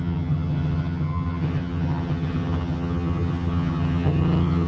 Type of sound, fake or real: fake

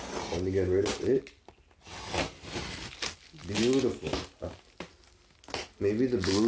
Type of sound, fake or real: real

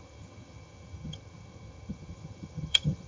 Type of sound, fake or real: fake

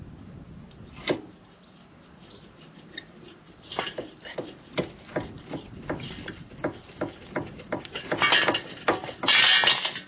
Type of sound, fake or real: real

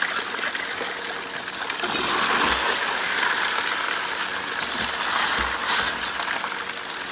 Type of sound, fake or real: real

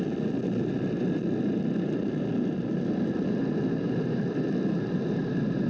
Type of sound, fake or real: real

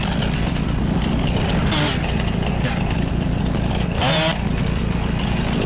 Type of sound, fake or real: real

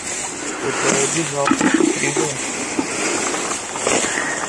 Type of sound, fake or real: real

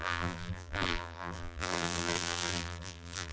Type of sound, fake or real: fake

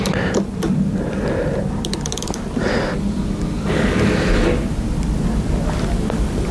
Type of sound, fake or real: real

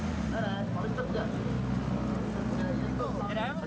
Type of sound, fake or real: real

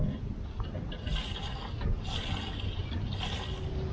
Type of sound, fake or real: real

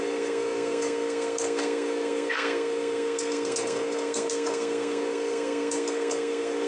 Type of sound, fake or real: fake